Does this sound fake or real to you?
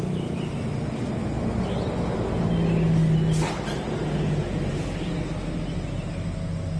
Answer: real